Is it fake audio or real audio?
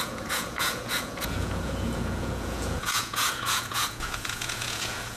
fake